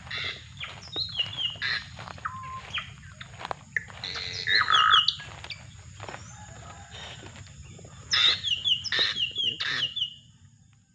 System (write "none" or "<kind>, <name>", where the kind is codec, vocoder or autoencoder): none